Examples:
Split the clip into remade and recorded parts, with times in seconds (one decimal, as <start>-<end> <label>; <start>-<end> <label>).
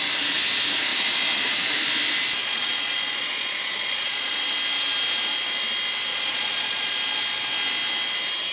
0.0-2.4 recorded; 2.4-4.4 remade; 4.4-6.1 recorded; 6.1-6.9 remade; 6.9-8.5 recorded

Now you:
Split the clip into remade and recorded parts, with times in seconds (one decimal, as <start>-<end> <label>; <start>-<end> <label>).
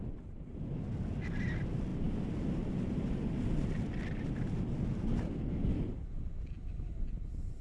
0.0-7.6 recorded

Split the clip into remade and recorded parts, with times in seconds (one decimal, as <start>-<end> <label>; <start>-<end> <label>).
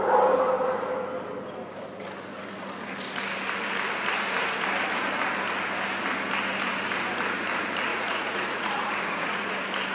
0.0-7.9 recorded; 7.9-9.5 remade; 9.5-9.9 recorded